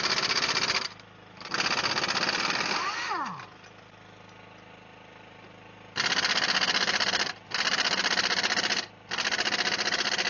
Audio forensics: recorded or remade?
recorded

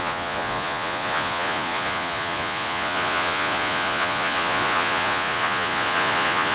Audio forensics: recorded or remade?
remade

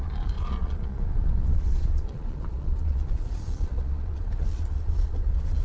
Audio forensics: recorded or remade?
remade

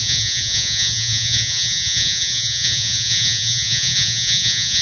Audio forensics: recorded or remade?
remade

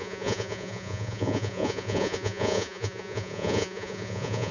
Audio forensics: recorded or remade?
remade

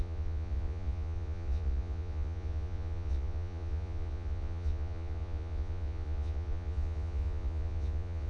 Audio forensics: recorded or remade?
remade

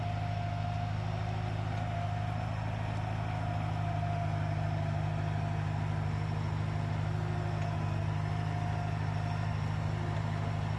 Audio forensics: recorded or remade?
recorded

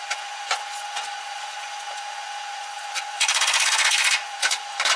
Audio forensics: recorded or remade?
remade